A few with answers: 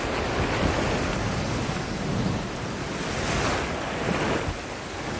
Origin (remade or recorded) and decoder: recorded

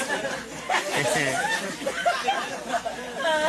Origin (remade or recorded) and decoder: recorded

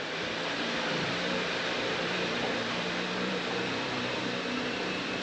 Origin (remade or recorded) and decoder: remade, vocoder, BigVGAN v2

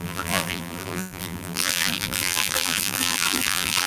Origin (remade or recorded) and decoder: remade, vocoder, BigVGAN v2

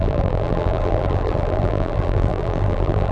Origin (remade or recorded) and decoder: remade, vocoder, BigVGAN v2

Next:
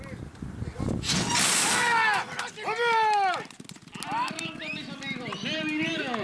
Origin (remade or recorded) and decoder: recorded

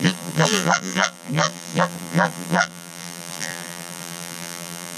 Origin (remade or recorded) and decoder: remade, vocoder, BigVGAN v2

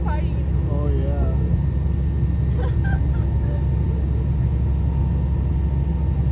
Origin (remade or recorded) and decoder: recorded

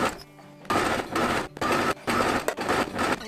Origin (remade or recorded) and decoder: recorded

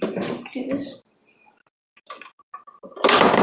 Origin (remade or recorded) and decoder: recorded